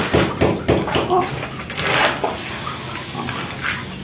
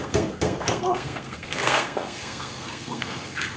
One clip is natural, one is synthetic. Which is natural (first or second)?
first